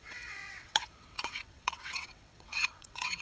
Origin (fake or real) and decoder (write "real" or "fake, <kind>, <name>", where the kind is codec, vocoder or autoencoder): fake, vocoder, WaveNeXt